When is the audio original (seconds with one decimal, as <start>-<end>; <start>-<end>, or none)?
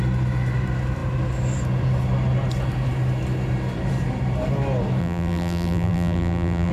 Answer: 0.0-5.0